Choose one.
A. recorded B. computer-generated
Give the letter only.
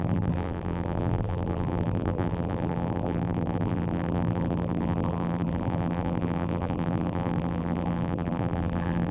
B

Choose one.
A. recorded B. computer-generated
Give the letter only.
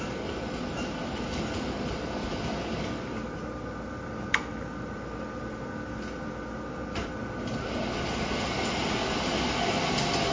A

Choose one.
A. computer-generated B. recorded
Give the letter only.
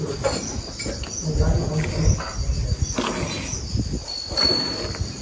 B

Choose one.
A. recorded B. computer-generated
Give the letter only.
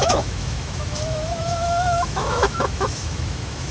B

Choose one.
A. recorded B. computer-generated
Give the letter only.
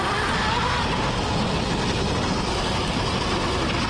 A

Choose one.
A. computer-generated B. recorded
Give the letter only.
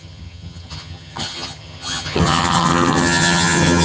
A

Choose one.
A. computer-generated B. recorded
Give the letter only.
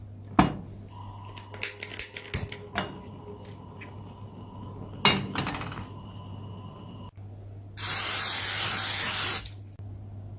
B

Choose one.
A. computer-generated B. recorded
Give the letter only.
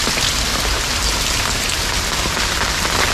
B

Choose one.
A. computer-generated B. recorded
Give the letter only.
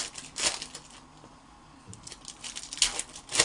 B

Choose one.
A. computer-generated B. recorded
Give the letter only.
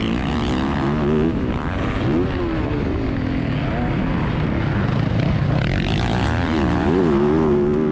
B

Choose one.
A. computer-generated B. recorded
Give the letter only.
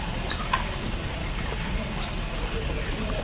B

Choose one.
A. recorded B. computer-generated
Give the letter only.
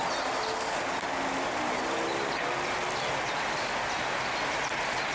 A